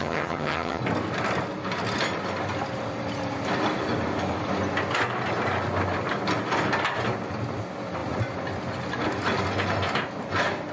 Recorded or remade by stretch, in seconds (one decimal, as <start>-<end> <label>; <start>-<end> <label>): 0.0-0.8 remade; 0.8-10.7 recorded